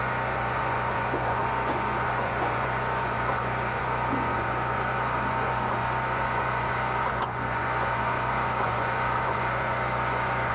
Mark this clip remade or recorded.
remade